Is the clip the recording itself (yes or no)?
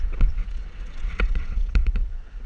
no